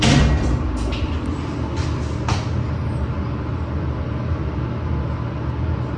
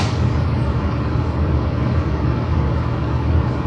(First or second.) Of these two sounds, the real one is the first